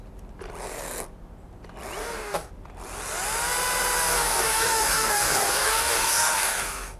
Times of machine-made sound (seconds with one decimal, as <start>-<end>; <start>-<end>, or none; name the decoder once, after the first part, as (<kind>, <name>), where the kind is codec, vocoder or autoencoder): 2.0-2.5 (codec, DAC); 4.1-7.0